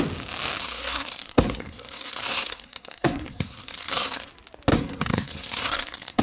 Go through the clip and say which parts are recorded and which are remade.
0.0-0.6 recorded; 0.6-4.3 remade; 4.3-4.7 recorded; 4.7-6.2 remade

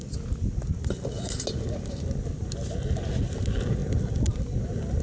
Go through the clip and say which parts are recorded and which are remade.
0.0-5.0 recorded

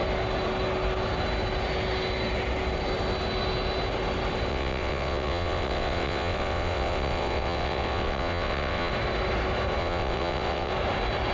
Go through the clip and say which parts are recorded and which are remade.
0.0-4.5 recorded; 4.5-8.9 remade; 8.9-9.8 recorded; 9.8-10.7 remade; 10.7-11.3 recorded

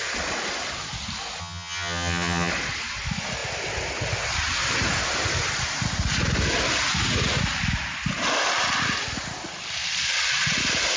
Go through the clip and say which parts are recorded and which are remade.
0.0-1.4 recorded; 1.4-2.5 remade; 2.5-11.0 recorded

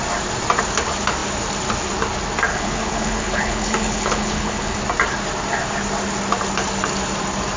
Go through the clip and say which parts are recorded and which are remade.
0.0-2.5 recorded; 2.5-4.8 remade; 4.8-7.6 recorded